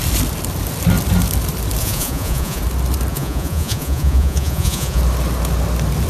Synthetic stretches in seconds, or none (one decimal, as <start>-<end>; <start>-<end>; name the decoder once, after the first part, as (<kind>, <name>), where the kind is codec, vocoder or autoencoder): 1.8-2.6 (vocoder, Vocos); 3.1-5.0

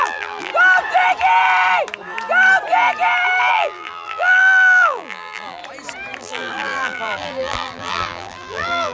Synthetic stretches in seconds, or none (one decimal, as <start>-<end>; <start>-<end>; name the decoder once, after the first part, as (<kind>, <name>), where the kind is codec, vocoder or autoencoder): 0.0-0.5 (vocoder, BigVGAN v2); 3.5-5.6; 6.2-8.9

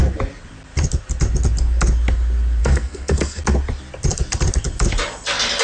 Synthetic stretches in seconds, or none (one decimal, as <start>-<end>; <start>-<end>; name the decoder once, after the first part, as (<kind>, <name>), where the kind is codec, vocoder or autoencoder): 2.6-3.4 (codec, SNAC)

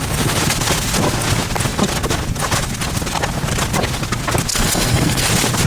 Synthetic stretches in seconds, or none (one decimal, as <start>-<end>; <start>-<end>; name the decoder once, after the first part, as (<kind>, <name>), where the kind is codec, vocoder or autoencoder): 4.5-5.3 (codec, SNAC)

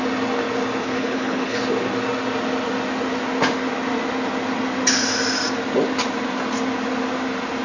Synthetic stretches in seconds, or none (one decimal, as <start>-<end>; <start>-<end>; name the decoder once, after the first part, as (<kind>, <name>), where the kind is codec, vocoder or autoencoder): 0.8-1.6 (codec, HILCodec)

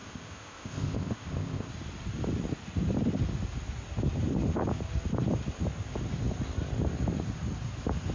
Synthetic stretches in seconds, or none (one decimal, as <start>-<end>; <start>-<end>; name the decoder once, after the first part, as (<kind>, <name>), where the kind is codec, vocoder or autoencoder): 0.0-1.7 (codec, ZipCodec)

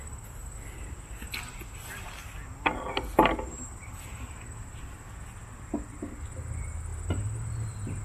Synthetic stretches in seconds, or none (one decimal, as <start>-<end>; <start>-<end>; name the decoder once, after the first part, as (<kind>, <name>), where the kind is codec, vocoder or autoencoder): none